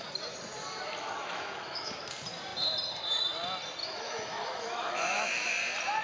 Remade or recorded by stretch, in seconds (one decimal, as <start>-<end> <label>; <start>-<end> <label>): 0.0-1.0 recorded; 1.0-2.0 remade; 2.0-3.8 recorded; 3.8-5.5 remade; 5.5-6.0 recorded